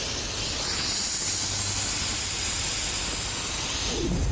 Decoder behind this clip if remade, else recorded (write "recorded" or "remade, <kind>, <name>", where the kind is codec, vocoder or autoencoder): recorded